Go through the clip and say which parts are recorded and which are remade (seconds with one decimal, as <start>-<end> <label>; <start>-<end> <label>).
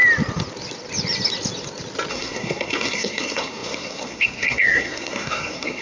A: 0.0-2.1 recorded; 2.1-5.8 remade